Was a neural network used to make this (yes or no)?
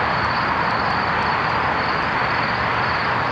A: no